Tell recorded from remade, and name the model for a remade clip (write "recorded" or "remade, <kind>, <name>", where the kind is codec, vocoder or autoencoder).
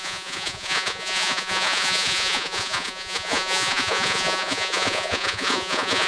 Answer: remade, vocoder, Vocos